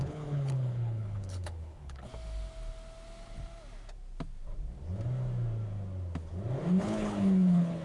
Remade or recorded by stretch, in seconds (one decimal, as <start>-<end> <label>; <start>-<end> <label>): 0.0-2.1 remade; 2.1-6.8 recorded; 6.8-7.8 remade